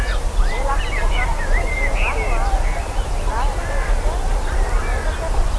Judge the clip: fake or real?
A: real